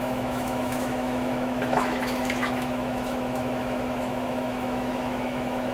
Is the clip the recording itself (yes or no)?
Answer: no